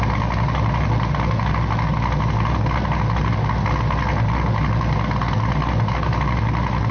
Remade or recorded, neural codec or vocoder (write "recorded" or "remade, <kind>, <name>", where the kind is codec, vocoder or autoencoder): recorded